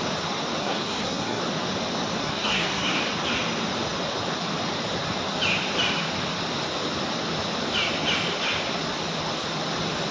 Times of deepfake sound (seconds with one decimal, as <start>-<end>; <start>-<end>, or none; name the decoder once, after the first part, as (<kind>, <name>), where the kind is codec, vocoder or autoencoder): 0.6-1.4 (codec, SNAC); 2.2-3.0